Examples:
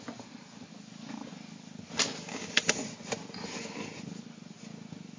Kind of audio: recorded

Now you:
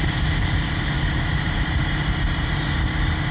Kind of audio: remade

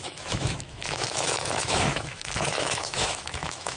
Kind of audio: remade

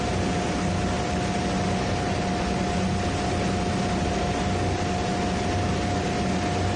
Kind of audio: recorded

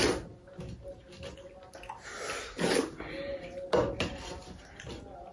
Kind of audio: recorded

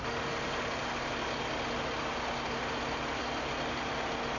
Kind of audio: recorded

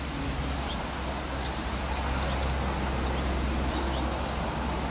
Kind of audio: recorded